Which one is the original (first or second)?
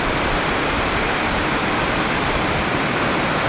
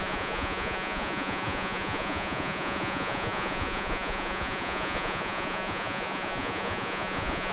first